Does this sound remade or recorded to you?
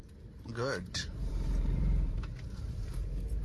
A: remade